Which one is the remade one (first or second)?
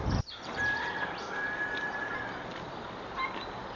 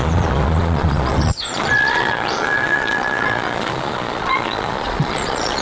second